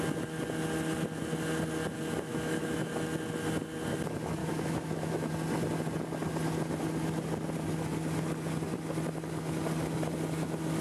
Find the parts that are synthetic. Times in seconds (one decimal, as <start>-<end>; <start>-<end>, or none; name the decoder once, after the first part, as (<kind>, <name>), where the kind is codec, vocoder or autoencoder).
2.3-2.9 (autoencoder, DAC-VAE); 4.4-5.3